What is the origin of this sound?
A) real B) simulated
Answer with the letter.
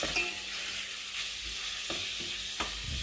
A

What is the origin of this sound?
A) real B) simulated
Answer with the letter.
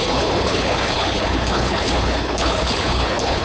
B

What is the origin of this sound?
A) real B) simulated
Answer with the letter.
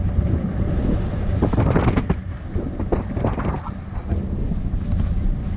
A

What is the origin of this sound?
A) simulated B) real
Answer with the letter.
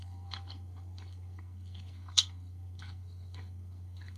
A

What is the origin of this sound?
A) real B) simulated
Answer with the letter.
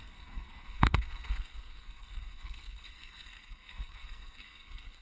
B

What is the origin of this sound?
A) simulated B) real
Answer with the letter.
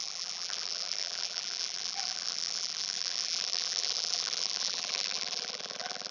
A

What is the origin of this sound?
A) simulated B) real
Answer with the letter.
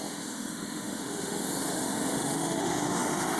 A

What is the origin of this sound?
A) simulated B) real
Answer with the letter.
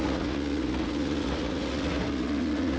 A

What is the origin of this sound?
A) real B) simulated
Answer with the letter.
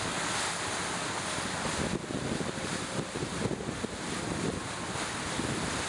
A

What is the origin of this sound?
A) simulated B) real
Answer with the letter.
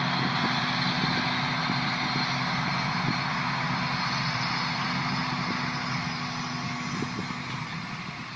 B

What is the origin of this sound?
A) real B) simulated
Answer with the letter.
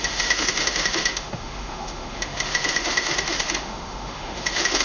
B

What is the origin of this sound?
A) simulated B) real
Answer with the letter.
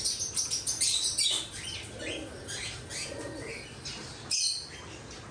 B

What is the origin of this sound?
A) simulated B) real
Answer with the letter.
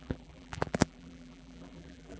A